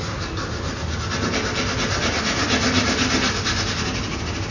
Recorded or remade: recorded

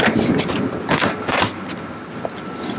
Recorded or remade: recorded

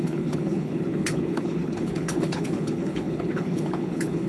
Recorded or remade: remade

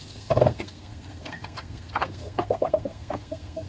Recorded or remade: remade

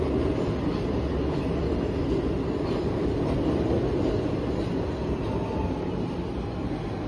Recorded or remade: recorded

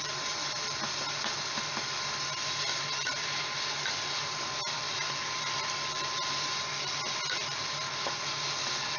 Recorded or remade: remade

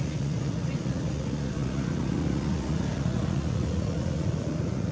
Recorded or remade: remade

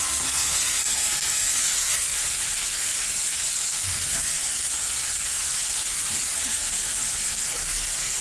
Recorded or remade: remade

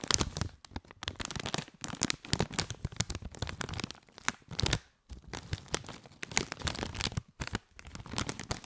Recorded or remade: recorded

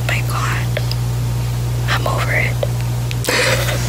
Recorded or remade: recorded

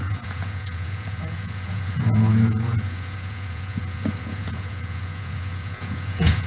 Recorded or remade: remade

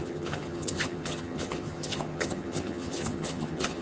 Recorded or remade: remade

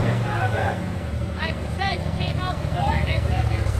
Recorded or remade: remade